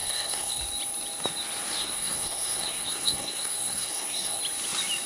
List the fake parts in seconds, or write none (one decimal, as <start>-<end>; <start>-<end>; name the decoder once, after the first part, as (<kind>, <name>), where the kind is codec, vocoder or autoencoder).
0.0-0.6 (codec, SNAC); 1.8-4.4